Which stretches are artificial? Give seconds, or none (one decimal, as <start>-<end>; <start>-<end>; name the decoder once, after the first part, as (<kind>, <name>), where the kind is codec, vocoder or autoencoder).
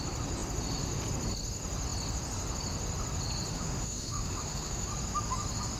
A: 3.5-4.9 (autoencoder, DAC-VAE)